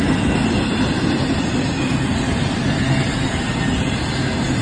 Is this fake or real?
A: real